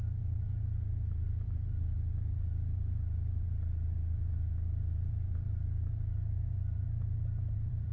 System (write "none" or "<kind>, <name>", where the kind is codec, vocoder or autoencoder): vocoder, BigVGAN v2